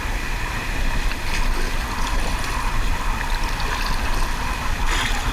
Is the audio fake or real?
real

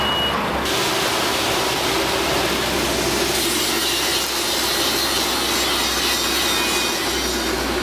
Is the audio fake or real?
real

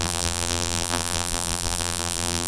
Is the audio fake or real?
fake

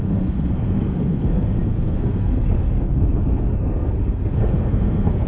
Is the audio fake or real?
fake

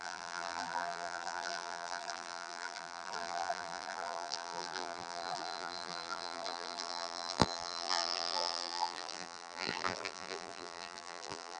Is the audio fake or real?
fake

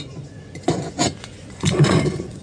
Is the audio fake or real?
fake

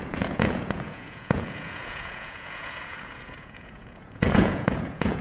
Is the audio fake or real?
fake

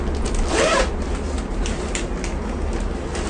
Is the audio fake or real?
real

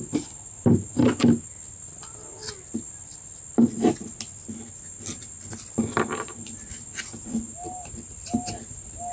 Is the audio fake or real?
real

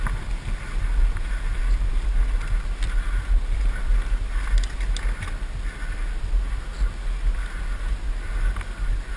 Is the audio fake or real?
real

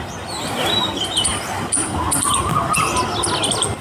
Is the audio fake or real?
real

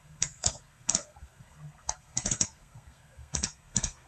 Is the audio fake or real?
fake